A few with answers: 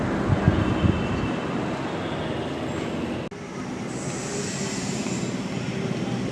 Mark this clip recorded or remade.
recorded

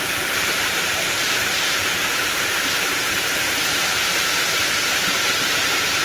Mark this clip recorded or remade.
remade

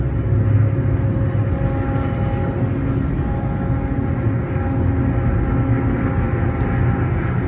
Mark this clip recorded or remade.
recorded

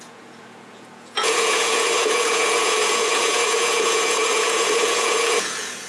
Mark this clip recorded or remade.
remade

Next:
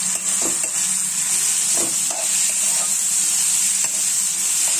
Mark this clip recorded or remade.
recorded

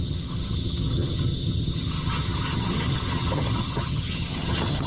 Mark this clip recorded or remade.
remade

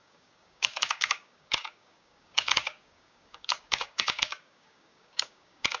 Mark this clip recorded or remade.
remade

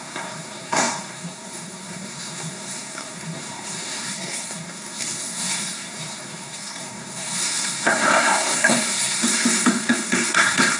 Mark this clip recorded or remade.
remade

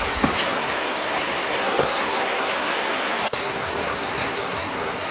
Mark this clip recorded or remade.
remade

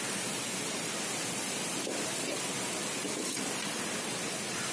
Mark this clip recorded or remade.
recorded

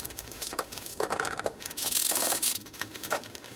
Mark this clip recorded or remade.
remade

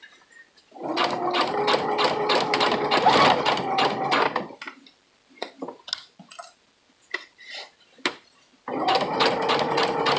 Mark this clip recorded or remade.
recorded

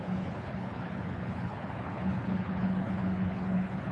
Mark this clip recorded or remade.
remade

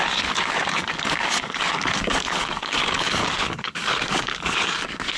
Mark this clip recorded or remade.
remade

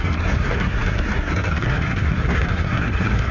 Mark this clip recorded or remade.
remade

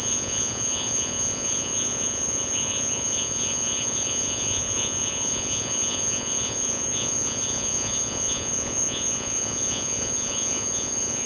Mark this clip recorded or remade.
remade